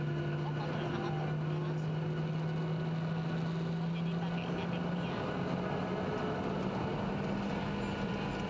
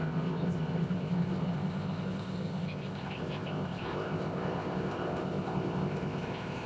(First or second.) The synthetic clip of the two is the second